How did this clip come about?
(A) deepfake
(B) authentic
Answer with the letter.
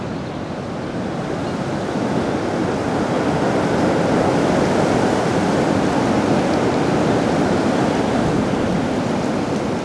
B